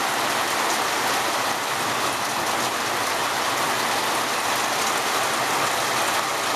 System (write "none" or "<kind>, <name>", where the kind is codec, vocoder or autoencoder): none